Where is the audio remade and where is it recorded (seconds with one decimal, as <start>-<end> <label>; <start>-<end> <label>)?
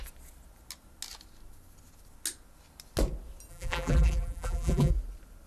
0.0-3.5 recorded; 3.5-4.9 remade; 4.9-5.5 recorded